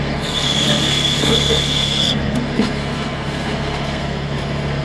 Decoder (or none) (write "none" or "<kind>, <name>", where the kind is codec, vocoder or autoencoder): codec, SNAC